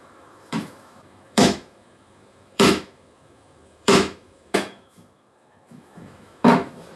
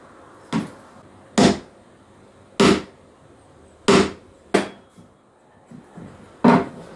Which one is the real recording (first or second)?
second